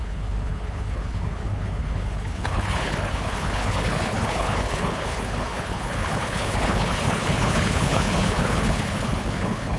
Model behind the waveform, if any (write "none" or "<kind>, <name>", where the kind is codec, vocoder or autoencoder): codec, HILCodec